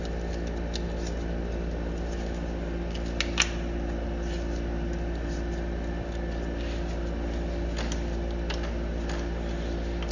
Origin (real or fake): real